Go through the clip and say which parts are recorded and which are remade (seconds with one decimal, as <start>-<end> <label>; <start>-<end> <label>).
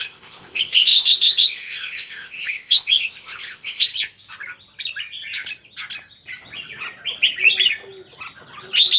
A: 0.0-3.9 remade; 3.9-9.0 recorded